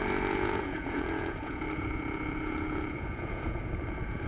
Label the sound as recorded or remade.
remade